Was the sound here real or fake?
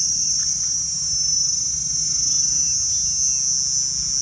real